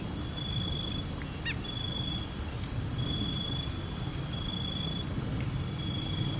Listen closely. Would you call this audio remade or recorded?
recorded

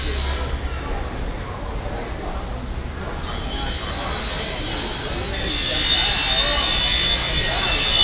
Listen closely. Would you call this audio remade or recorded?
recorded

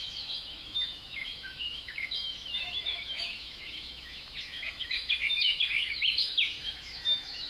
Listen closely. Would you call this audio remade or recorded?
remade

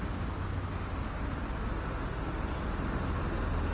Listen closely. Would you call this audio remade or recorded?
recorded